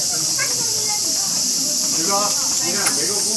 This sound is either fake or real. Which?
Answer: real